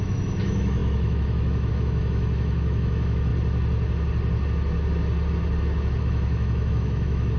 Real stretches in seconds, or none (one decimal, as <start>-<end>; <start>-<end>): 3.3-6.0